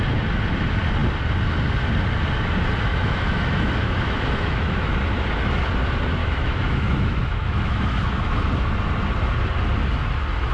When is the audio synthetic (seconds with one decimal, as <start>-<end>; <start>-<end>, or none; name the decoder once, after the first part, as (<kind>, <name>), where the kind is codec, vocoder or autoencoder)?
2.9-4.9 (autoencoder, DAC-VAE); 6.2-8.5